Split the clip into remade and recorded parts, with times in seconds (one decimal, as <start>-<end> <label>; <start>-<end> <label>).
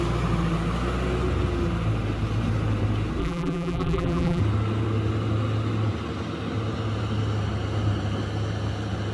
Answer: 0.0-3.2 recorded; 3.2-4.4 remade; 4.4-9.1 recorded